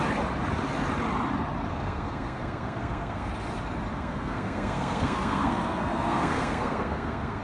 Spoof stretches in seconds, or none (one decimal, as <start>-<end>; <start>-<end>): 1.7-3.3; 3.9-7.4